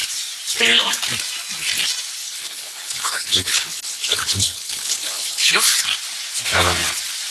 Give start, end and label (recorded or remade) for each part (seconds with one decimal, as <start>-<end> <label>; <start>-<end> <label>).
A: 0.0-2.2 recorded; 2.2-5.5 remade; 5.5-7.3 recorded